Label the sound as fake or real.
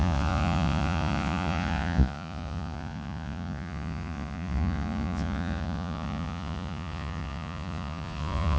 fake